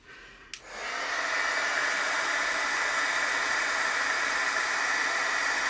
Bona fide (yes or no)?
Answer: yes